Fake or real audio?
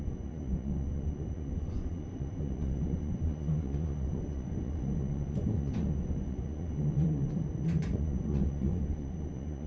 fake